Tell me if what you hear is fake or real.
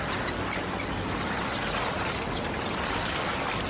real